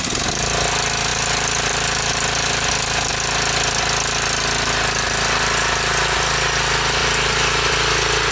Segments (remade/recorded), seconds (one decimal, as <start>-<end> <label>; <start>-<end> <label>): 0.0-1.1 recorded; 1.1-3.1 remade; 3.1-7.0 recorded; 7.0-7.7 remade; 7.7-8.3 recorded